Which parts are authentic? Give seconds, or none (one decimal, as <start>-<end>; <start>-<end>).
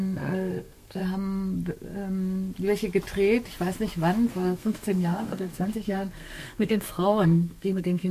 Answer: 1.0-4.3